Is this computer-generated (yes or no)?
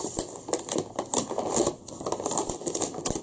no